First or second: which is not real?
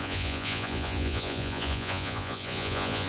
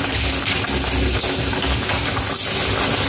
first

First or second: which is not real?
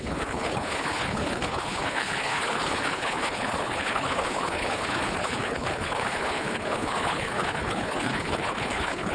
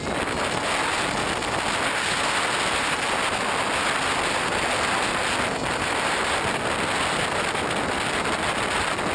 first